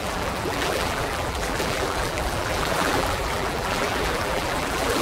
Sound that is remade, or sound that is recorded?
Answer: remade